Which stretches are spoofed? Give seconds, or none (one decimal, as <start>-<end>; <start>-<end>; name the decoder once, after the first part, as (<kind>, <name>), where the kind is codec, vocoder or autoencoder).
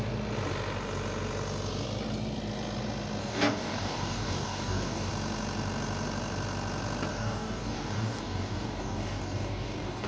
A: 3.2-5.1 (codec, DAC); 7.1-10.1